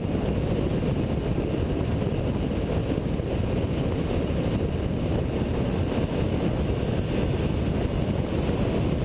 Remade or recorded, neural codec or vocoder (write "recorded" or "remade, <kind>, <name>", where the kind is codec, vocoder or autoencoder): recorded